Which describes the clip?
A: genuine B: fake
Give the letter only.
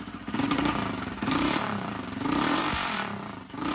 B